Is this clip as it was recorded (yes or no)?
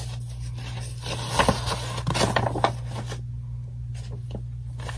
yes